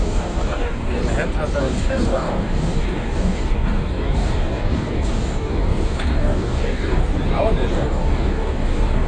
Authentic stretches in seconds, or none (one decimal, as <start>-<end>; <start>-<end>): 1.0-1.6; 7.0-7.7